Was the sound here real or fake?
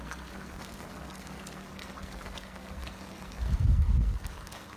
fake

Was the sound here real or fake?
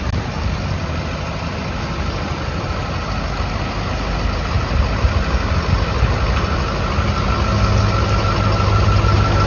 real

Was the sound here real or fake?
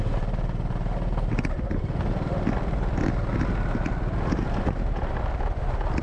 real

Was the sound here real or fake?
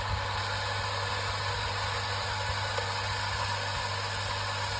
real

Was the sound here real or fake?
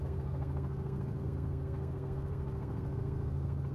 fake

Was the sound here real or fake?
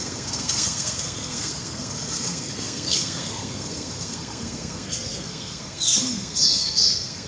fake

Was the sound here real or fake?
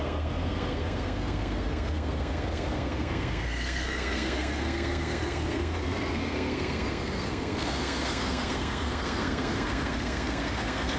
fake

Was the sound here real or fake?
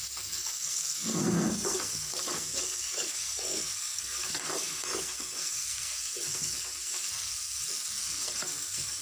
fake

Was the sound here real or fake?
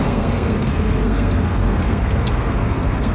fake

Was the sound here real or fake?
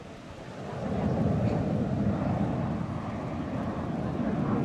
real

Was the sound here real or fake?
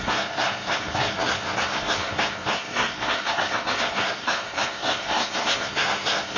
fake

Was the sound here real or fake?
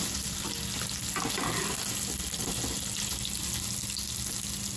real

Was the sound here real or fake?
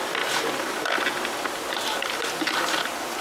real